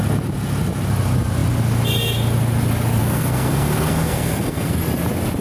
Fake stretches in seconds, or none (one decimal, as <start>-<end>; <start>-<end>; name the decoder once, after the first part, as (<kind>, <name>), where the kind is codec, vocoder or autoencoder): 3.0-4.8 (codec, SNAC)